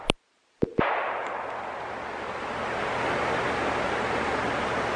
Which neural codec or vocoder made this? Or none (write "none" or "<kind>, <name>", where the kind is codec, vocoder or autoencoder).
none